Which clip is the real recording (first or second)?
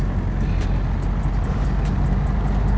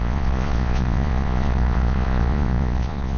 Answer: first